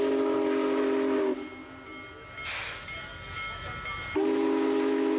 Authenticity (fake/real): real